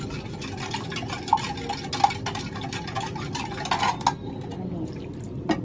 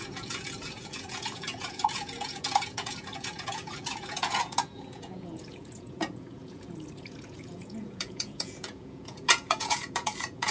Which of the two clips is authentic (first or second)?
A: first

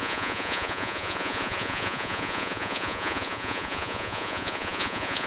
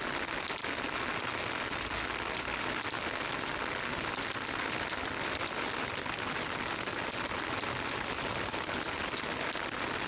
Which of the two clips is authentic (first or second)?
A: second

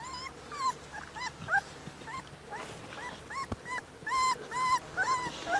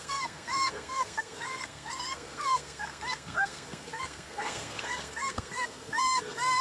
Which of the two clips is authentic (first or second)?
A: first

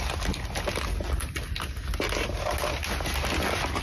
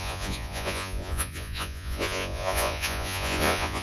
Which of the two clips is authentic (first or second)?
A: first